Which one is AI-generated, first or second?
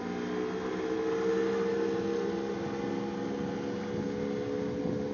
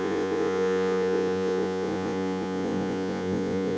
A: second